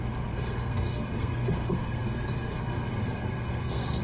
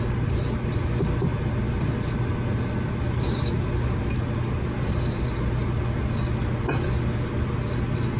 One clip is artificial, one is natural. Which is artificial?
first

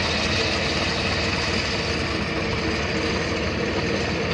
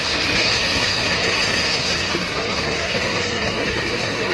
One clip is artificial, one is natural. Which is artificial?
second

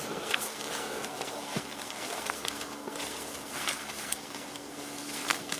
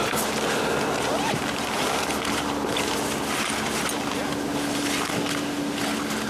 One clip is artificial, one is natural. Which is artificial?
first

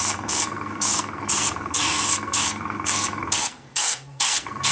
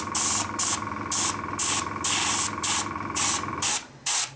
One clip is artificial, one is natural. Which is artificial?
first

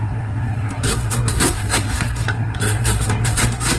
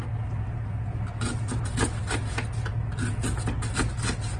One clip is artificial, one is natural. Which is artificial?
first